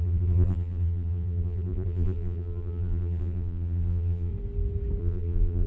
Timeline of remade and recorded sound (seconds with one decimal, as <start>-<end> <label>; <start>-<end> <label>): 0.0-4.3 remade; 4.3-5.0 recorded; 5.0-5.7 remade